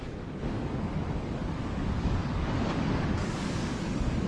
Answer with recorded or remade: remade